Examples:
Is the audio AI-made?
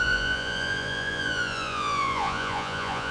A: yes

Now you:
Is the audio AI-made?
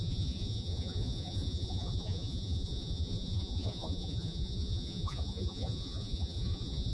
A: yes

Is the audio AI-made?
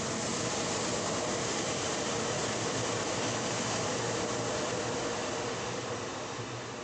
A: no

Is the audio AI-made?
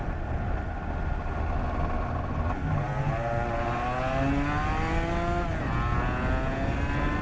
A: no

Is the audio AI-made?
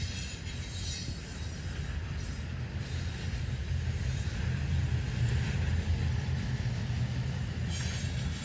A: no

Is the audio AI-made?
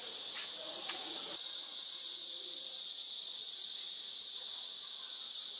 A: yes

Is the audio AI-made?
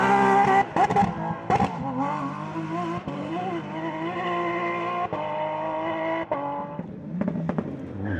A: no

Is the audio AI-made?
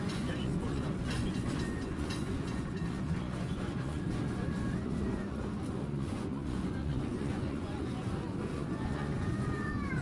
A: yes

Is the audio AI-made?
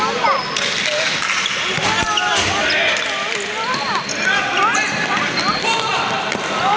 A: no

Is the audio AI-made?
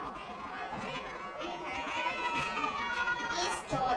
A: yes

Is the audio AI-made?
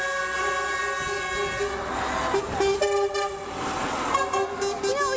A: no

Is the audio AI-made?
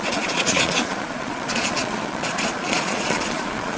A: yes